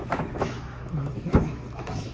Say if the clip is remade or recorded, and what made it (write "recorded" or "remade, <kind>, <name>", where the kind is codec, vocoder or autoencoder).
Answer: remade, autoencoder, DAC-VAE